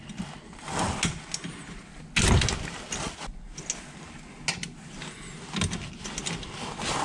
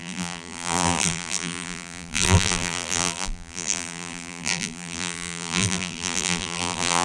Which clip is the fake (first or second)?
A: second